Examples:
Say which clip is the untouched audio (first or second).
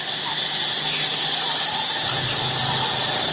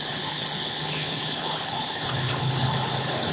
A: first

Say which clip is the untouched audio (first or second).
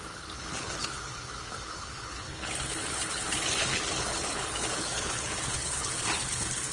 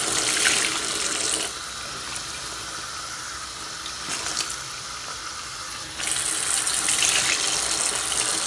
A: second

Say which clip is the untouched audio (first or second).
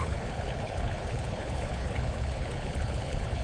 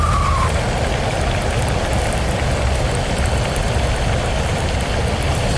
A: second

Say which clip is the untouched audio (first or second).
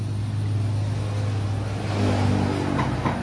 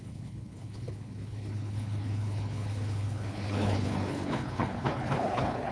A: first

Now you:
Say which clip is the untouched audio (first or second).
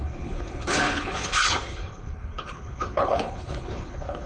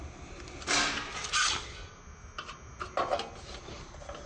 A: second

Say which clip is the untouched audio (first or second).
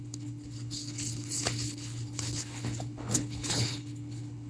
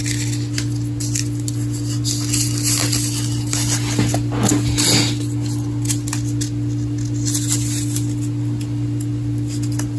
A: second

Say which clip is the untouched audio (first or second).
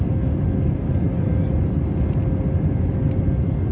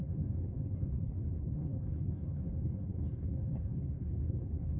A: first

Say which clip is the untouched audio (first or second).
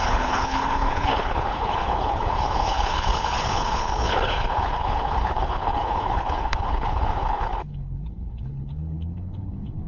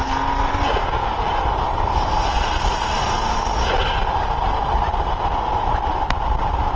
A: second